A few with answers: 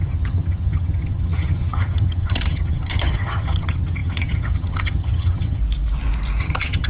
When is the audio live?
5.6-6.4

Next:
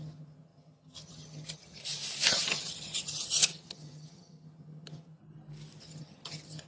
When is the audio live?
1.8-2.3; 5.2-5.8

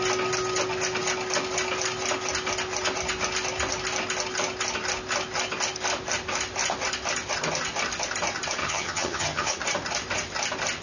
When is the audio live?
0.0-8.6; 9.6-10.8

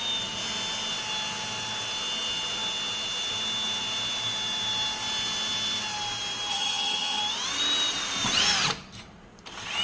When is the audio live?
0.0-6.5; 7.2-9.8

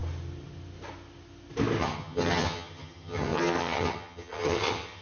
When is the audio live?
0.0-1.8

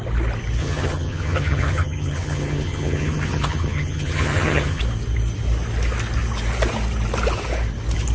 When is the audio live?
0.0-0.6; 4.8-8.1